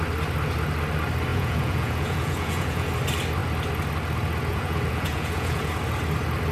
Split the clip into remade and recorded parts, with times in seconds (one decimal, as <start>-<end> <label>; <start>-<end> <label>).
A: 0.0-1.3 recorded; 1.3-2.9 remade; 2.9-4.5 recorded; 4.5-5.7 remade; 5.7-6.5 recorded